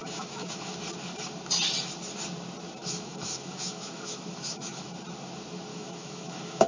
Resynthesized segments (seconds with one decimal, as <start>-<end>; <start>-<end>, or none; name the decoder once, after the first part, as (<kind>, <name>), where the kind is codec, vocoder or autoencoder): 0.0-0.8 (autoencoder, DAC-VAE); 2.8-4.9; 5.7-6.7